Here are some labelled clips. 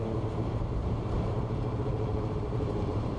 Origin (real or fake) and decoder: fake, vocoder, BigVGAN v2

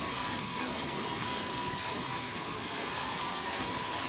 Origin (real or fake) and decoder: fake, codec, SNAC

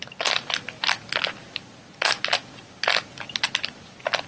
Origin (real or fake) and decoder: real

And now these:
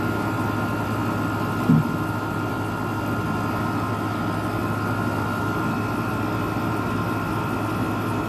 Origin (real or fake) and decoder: real